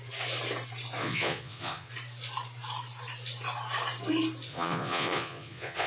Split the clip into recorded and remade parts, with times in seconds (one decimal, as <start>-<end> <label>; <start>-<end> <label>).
0.0-1.0 recorded; 1.0-1.9 remade; 1.9-4.5 recorded; 4.5-5.9 remade